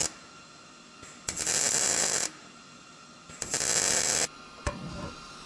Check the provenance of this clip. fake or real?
real